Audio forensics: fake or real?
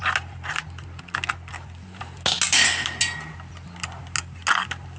real